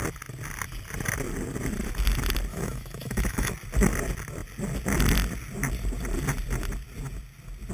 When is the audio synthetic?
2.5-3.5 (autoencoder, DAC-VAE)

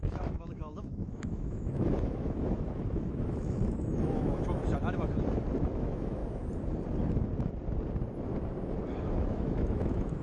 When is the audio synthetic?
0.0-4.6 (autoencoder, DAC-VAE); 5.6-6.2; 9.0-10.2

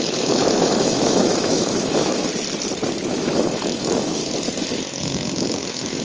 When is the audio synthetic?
0.0-2.3 (autoencoder, DAC-VAE); 2.9-4.2; 5.0-6.0